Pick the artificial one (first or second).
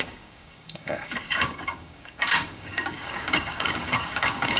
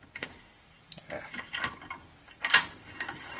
first